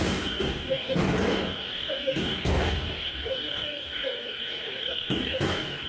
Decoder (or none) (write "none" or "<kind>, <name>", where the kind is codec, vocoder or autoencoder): codec, DAC